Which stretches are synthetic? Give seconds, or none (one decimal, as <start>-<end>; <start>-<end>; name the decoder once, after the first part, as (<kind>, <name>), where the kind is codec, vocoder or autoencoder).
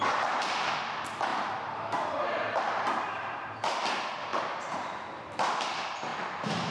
1.3-3.8 (vocoder, BigVGAN v2); 4.3-4.9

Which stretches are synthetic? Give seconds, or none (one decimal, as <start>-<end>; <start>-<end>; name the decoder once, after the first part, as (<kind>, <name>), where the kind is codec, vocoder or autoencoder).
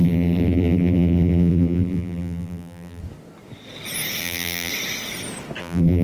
0.0-3.0 (vocoder, BigVGAN v2); 4.2-4.7; 5.6-6.0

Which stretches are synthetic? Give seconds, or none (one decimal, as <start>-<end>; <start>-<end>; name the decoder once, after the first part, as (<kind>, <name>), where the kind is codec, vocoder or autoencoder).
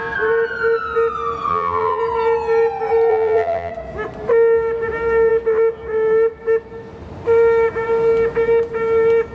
1.5-2.0 (vocoder, BigVGAN v2); 3.1-3.7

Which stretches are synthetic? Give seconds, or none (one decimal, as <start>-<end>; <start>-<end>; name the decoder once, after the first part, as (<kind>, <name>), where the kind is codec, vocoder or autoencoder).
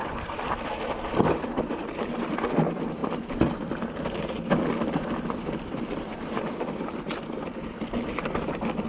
0.0-3.0 (vocoder, BigVGAN v2); 4.9-8.9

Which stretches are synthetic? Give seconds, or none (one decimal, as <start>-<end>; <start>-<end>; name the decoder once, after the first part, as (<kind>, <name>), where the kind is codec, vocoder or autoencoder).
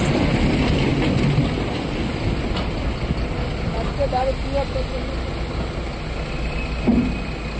none